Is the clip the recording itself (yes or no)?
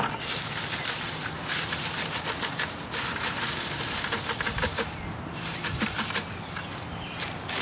yes